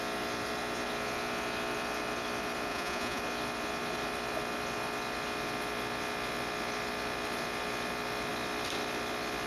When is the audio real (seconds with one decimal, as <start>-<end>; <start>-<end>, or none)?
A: 0.0-2.7; 3.2-9.5